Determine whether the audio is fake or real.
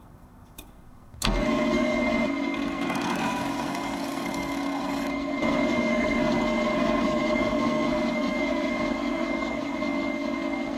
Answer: fake